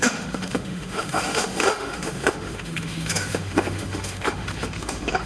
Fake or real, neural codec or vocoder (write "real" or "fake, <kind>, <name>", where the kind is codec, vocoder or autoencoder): fake, autoencoder, DAC-VAE